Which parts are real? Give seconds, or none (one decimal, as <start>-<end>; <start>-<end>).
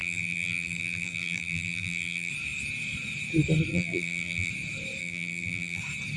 2.3-3.7; 4.5-5.0; 5.8-6.2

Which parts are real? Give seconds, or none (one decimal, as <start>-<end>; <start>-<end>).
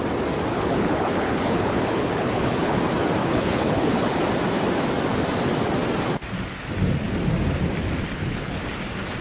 0.0-0.5; 2.8-3.2; 4.2-8.0; 8.6-9.2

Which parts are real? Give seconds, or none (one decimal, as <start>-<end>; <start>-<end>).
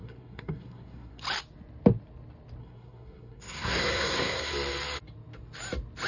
1.2-2.6; 4.5-6.1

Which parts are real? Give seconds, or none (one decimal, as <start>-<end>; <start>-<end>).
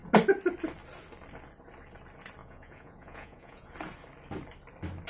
0.0-2.4; 3.7-5.1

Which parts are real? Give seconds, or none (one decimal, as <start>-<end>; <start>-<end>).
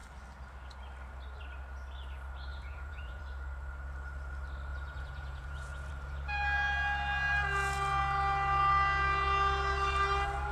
0.0-2.5; 3.2-4.7; 5.9-10.5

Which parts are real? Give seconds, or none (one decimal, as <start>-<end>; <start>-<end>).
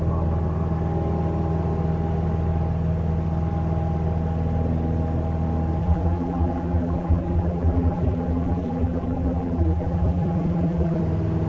0.0-5.8; 11.0-11.5